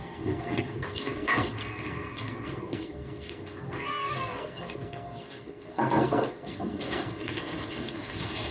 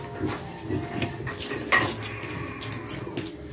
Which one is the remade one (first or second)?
first